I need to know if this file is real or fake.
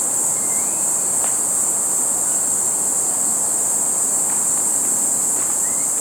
real